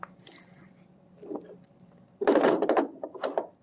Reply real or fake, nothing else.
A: real